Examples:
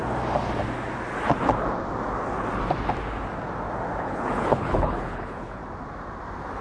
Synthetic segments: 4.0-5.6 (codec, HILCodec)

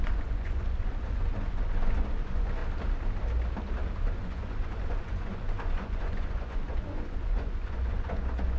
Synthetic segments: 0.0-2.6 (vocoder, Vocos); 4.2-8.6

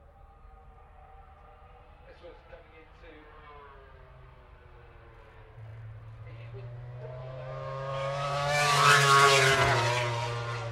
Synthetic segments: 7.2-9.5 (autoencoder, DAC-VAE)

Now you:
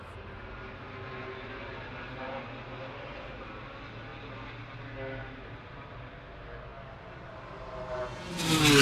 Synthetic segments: none

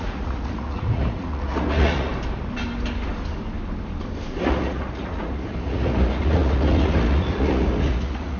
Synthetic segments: 0.0-2.1 (vocoder, Vocos); 4.4-8.4

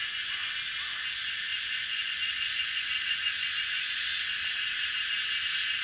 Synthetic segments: 0.0-0.5 (vocoder, Vocos); 1.5-4.3

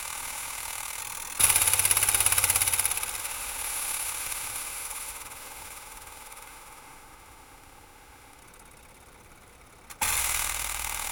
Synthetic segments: 0.0-1.0 (autoencoder, DAC-VAE); 3.2-8.4; 10.2-11.1

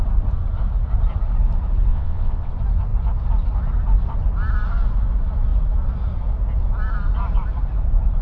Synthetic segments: 1.9-2.5 (vocoder, WaveNeXt)